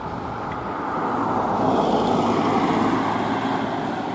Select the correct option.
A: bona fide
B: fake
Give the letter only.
A